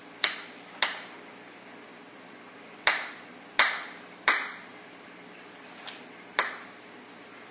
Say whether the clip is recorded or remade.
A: recorded